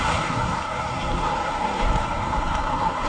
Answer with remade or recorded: remade